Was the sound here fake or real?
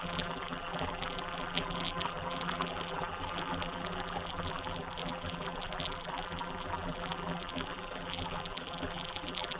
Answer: fake